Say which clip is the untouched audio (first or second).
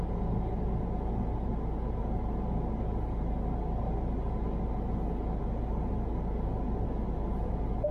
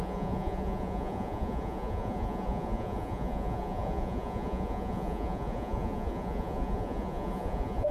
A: first